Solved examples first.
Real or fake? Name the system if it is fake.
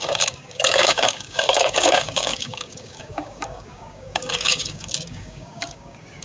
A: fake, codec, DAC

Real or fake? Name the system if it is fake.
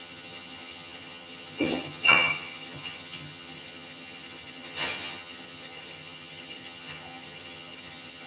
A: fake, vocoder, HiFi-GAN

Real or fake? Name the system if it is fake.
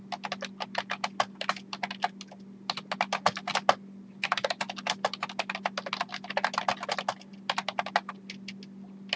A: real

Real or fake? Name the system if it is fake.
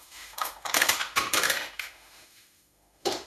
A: fake, autoencoder, DAC-VAE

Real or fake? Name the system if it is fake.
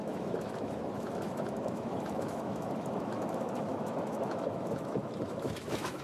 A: fake, autoencoder, DAC-VAE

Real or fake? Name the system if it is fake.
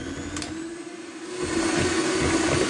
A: real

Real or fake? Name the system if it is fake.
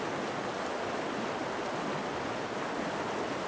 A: real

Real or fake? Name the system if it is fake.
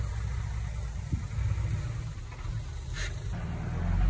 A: real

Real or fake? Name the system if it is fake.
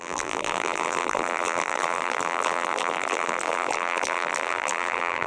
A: fake, vocoder, BigVGAN v2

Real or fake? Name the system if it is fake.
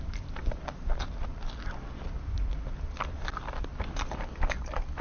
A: fake, vocoder, BigVGAN v2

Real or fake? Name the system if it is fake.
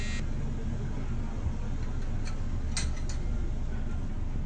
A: real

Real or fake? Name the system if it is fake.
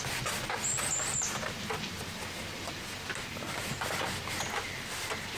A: real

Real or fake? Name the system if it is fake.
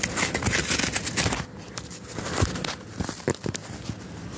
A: fake, vocoder, BigVGAN v2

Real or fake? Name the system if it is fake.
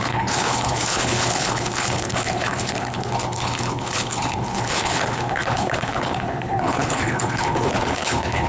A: fake, codec, HILCodec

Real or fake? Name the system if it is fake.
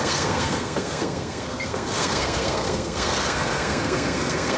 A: fake, codec, SNAC